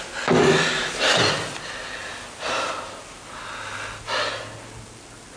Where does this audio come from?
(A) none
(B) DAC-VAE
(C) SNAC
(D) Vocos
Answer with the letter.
A